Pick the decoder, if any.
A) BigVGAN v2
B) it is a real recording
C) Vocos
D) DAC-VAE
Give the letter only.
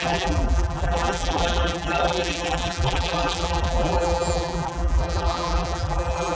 A